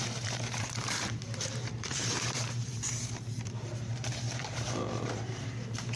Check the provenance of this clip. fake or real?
fake